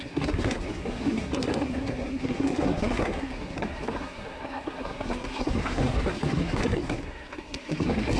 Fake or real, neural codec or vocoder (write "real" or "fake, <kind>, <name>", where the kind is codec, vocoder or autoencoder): fake, codec, SNAC